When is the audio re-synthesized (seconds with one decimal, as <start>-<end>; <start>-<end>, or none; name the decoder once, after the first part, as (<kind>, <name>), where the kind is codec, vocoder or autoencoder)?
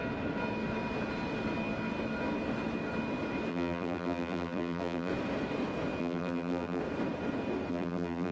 3.5-5.1 (vocoder, BigVGAN v2); 6.0-6.8; 7.7-8.3